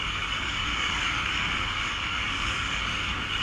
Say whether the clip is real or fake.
fake